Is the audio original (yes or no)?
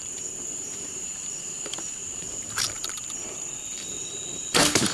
no